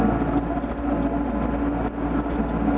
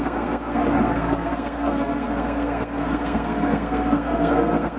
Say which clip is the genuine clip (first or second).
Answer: first